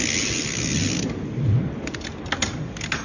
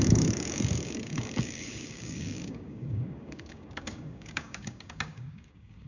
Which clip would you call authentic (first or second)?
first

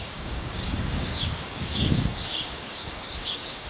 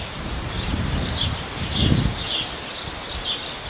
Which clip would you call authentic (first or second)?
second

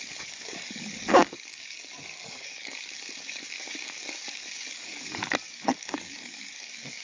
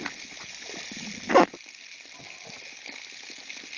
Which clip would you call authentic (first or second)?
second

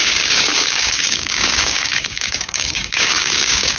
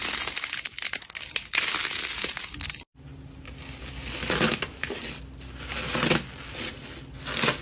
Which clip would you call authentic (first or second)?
second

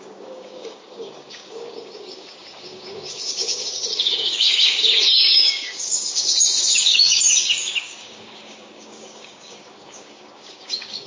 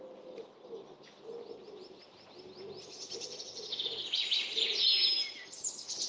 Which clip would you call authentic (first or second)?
second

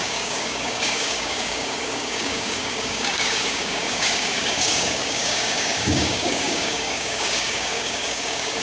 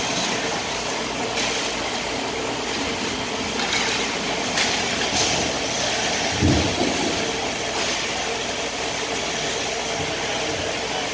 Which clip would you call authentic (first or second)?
second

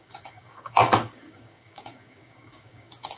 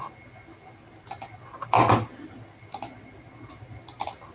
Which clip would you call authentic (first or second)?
second